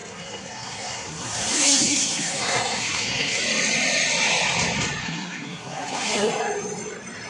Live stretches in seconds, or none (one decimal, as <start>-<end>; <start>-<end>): 3.4-5.0; 6.3-7.3